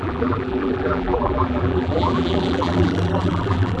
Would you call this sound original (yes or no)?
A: no